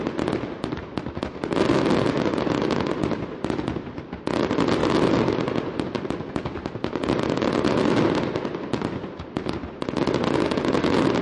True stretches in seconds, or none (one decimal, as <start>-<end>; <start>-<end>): 0.0-11.2